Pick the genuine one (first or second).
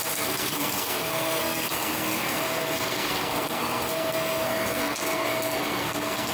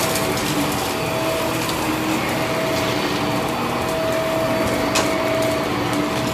second